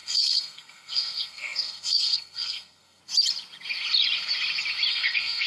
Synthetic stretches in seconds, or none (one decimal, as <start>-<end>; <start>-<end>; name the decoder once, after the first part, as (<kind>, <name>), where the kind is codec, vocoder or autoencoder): 0.0-3.0 (codec, SNAC); 4.9-5.5